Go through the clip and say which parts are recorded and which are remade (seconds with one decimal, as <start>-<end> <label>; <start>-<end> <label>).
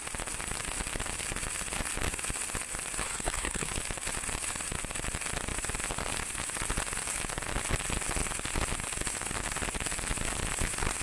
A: 0.0-3.0 recorded; 3.0-3.7 remade; 3.7-11.0 recorded